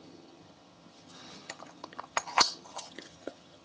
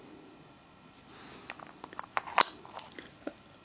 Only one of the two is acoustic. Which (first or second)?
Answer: second